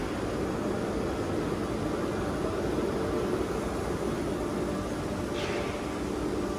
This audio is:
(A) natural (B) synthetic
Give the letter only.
A